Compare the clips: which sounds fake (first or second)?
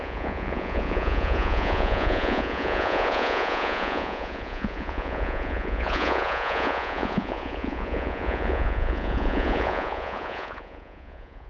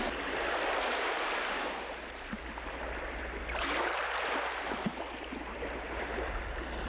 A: first